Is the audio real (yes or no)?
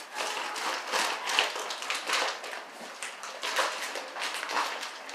yes